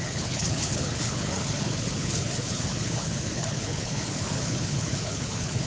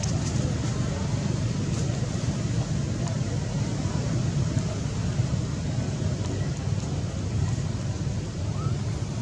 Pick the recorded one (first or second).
second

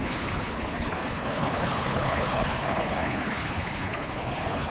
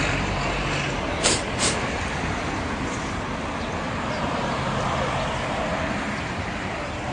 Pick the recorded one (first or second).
second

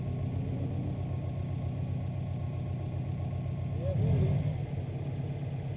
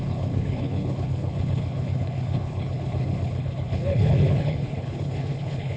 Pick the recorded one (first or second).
first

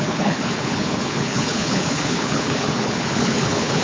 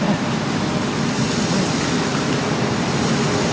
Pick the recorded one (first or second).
second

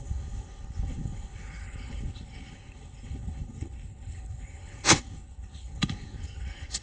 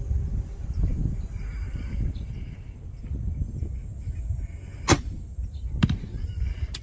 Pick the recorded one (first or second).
second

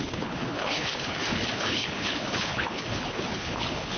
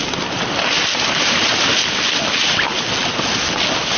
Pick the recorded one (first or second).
second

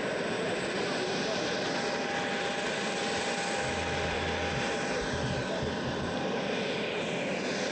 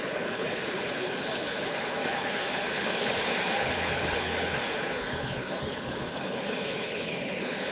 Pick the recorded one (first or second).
first